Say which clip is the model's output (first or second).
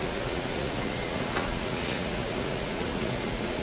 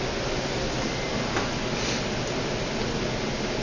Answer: first